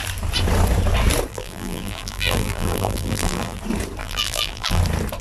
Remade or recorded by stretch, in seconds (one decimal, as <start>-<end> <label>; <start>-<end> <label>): 0.0-1.3 recorded; 1.3-3.6 remade; 3.6-4.0 recorded; 4.0-4.8 remade; 4.8-5.2 recorded